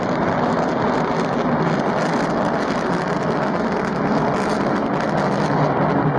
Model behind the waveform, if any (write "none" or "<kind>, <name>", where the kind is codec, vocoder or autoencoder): none